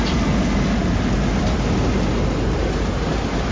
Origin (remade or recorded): recorded